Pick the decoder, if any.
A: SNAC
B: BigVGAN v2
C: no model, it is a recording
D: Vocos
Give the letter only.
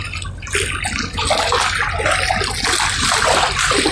C